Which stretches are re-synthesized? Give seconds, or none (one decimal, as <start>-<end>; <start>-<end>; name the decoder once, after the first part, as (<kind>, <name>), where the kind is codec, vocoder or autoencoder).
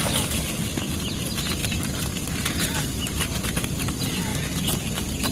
none